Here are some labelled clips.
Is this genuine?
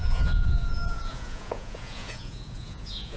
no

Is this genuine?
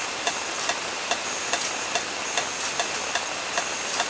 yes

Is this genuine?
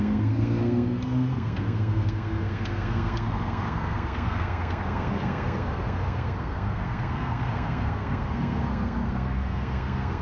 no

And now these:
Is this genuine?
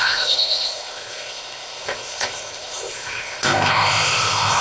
no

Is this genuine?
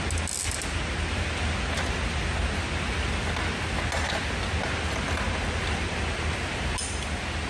yes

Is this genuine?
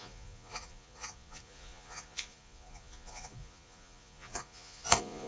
no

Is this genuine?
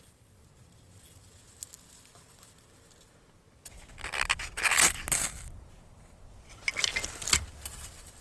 yes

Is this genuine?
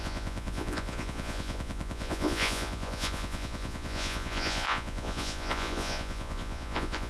no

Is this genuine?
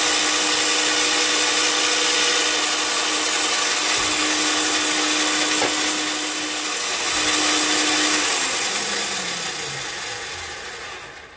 yes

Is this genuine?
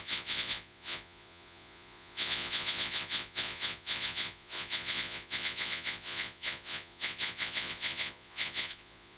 no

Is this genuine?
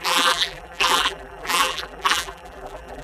no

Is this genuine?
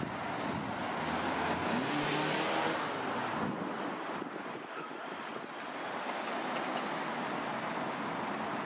yes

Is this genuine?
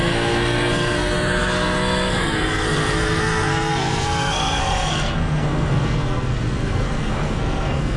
no